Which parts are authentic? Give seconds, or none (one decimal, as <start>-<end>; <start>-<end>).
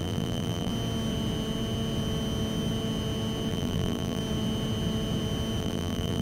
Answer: 0.7-3.5; 4.2-5.6